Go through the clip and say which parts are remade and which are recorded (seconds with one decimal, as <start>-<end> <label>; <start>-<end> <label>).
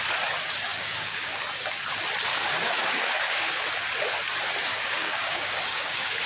0.0-0.7 recorded; 0.7-1.4 remade; 1.4-2.3 recorded; 2.3-3.6 remade; 3.6-4.7 recorded; 4.7-6.3 remade